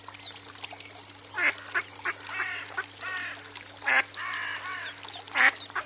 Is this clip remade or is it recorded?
recorded